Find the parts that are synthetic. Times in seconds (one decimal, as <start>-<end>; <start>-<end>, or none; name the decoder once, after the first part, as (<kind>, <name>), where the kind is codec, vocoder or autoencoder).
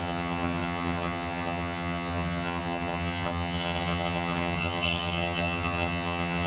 0.0-6.5 (vocoder, HiFi-GAN)